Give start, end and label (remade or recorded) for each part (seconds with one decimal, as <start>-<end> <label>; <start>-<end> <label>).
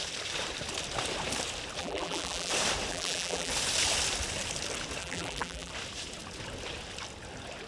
0.0-1.8 recorded; 1.8-2.5 remade; 2.5-2.9 recorded; 2.9-3.5 remade; 3.5-5.0 recorded; 5.0-5.7 remade; 5.7-7.7 recorded